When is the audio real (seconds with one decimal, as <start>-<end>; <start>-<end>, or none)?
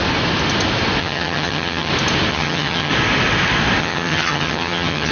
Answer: 0.0-1.0; 1.9-2.3; 2.9-3.8